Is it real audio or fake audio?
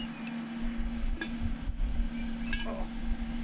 real